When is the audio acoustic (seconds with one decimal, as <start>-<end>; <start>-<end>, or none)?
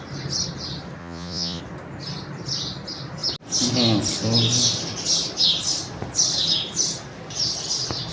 0.0-1.0; 1.6-8.1